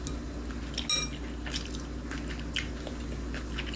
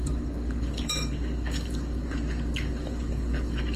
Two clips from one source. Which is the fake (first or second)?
second